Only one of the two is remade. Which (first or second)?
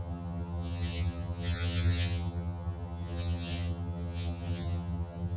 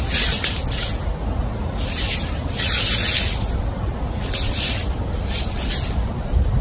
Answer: first